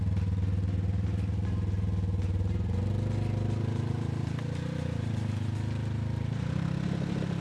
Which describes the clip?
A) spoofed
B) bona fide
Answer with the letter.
B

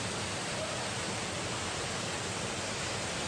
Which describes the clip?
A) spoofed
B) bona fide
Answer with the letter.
B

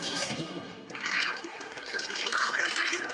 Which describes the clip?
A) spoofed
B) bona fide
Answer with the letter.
A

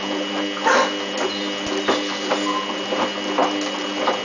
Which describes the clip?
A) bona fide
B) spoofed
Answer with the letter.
A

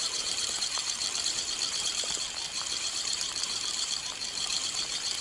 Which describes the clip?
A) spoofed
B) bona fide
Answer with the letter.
A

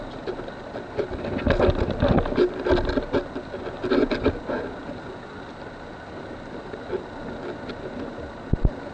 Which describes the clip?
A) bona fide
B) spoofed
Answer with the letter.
A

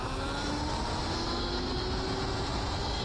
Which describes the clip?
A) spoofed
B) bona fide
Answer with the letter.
B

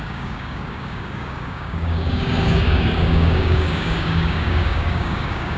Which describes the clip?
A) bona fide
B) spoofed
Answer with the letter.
B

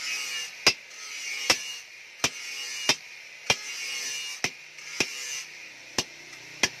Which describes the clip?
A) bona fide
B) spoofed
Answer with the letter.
A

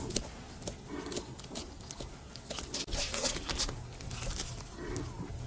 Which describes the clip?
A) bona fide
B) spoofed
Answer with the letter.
A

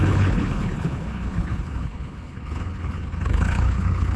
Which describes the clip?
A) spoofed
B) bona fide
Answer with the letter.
A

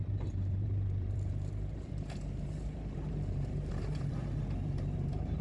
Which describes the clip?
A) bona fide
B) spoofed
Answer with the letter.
B